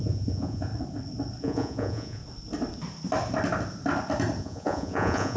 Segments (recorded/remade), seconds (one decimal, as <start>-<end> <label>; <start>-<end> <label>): 0.0-0.7 remade; 0.7-1.4 recorded; 1.4-2.2 remade; 2.2-4.4 recorded; 4.4-5.4 remade